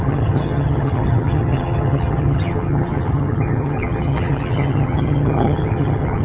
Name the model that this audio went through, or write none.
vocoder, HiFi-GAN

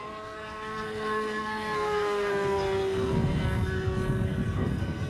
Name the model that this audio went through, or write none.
codec, SNAC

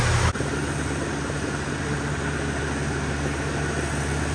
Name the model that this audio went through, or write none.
none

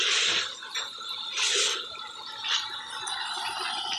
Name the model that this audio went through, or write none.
none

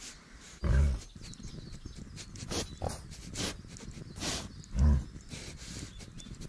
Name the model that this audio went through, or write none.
none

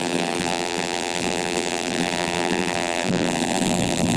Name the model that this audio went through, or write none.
vocoder, BigVGAN v2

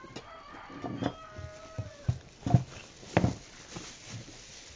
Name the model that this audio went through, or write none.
none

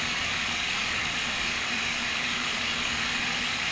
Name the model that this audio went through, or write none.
codec, DAC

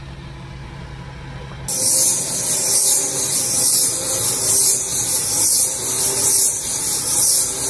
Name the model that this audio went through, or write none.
none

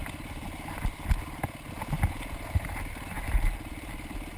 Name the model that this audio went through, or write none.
none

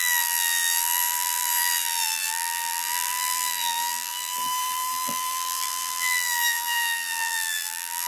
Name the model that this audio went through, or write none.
vocoder, BigVGAN v2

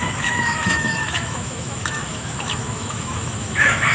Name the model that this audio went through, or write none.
autoencoder, DAC-VAE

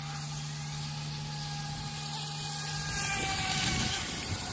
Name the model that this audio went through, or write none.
none